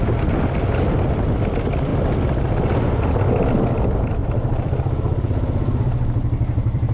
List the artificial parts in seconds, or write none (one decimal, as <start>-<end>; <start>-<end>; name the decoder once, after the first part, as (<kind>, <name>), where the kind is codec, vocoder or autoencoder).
4.2-6.9 (vocoder, BigVGAN v2)